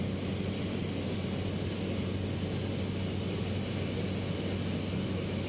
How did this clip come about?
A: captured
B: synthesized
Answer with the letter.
A